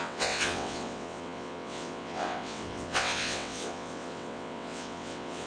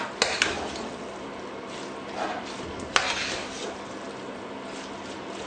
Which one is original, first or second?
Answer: second